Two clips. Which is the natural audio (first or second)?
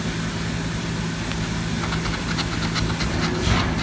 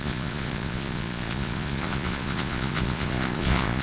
first